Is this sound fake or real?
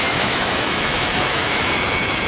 fake